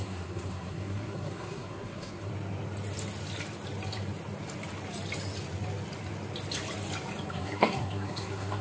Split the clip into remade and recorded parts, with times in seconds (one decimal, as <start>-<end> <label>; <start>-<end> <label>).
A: 0.0-2.3 remade; 2.3-7.3 recorded; 7.3-8.6 remade

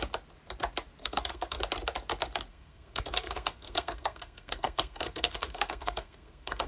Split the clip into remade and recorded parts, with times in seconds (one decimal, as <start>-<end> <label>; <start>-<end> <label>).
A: 0.0-1.0 recorded; 1.0-1.6 remade; 1.6-2.5 recorded; 2.5-6.7 remade

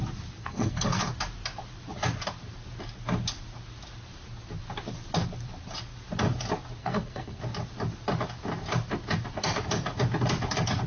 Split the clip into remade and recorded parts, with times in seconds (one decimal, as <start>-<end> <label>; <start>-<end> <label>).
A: 0.0-0.4 recorded; 0.4-1.0 remade; 1.0-6.8 recorded; 6.8-7.4 remade; 7.4-10.9 recorded

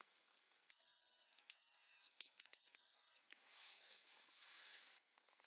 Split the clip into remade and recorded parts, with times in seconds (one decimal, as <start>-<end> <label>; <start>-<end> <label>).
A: 0.0-5.5 remade

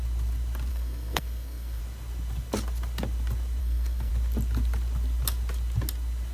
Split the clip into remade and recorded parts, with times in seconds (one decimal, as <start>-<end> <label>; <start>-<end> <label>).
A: 0.0-0.7 recorded; 0.7-1.8 remade; 1.8-3.6 recorded; 3.6-4.1 remade; 4.1-6.3 recorded